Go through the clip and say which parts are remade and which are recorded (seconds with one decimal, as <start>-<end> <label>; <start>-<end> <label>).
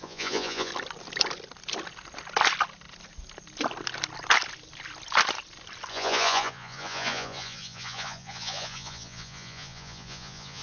0.0-0.7 remade; 0.7-5.9 recorded; 5.9-10.6 remade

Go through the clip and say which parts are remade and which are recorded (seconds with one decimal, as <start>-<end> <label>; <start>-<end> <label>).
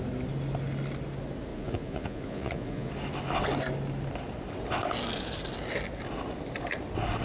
0.0-1.5 recorded; 1.5-2.9 remade; 2.9-7.2 recorded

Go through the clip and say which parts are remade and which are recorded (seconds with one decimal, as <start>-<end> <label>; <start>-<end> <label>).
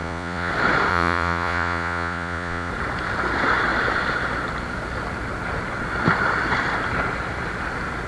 0.0-0.5 remade; 0.5-0.9 recorded; 0.9-2.7 remade; 2.7-8.1 recorded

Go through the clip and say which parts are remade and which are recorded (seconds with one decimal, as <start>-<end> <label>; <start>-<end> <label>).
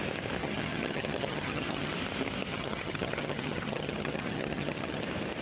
0.0-0.4 recorded; 0.4-1.9 remade; 1.9-2.5 recorded; 2.5-5.0 remade; 5.0-5.4 recorded